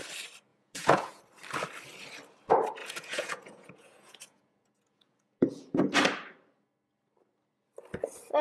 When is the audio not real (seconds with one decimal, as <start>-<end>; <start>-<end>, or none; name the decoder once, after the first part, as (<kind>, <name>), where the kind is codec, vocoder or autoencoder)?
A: 0.5-1.2 (vocoder, Vocos); 2.8-5.8